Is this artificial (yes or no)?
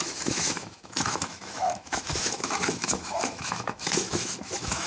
yes